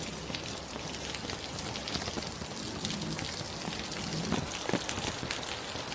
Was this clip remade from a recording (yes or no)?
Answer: no